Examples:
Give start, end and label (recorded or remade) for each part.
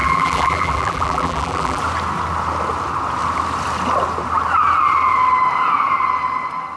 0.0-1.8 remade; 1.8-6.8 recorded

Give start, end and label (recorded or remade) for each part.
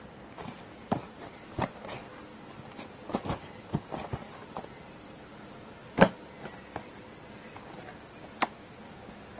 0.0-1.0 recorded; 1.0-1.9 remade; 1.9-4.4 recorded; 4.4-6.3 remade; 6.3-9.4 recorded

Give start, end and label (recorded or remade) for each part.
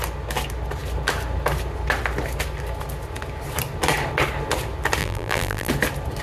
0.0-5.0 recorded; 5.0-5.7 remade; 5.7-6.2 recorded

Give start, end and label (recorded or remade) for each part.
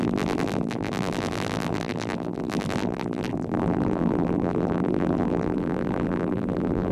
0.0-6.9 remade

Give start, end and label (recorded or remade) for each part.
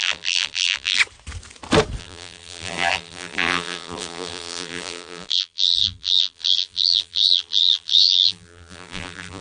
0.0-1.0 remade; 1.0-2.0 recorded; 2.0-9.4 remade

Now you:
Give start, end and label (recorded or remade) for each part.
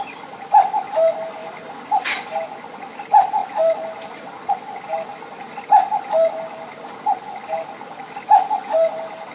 0.0-1.4 recorded; 1.4-2.1 remade; 2.1-3.4 recorded; 3.4-4.0 remade; 4.0-5.1 recorded; 5.1-6.0 remade; 6.0-9.3 recorded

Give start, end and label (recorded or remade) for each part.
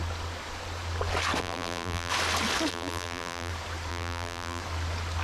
0.0-1.4 recorded; 1.4-2.1 remade; 2.1-2.7 recorded; 2.7-3.5 remade; 3.5-3.9 recorded; 3.9-4.6 remade; 4.6-5.2 recorded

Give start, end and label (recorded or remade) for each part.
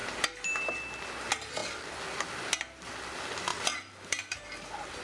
0.0-3.5 recorded; 3.5-4.4 remade; 4.4-5.0 recorded